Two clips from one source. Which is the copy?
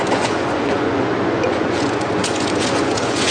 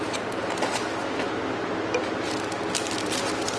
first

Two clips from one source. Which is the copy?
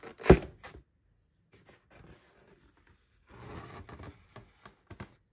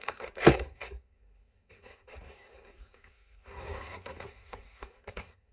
second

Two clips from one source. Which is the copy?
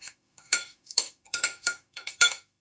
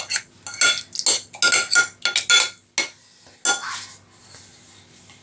first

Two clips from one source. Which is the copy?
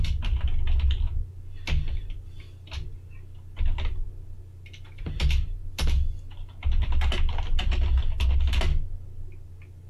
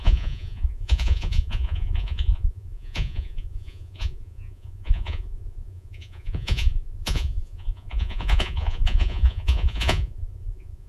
second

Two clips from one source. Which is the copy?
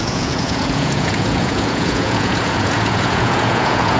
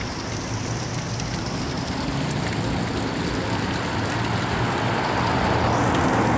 first